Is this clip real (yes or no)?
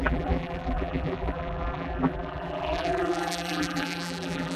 no